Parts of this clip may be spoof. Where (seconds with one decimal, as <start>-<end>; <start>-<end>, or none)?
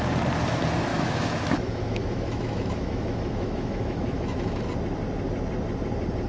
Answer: 0.9-4.7